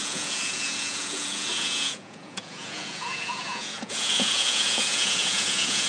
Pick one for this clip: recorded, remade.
remade